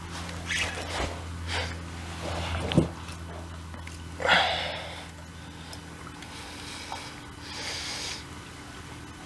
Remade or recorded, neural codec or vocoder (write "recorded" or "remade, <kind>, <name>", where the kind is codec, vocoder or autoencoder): recorded